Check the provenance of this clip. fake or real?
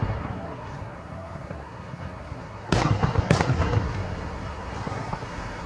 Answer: fake